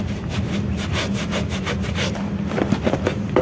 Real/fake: fake